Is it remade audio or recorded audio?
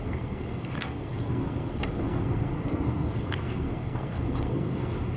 remade